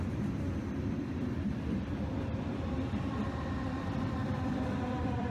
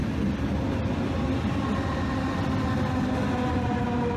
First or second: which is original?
second